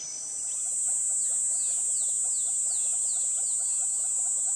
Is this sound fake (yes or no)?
no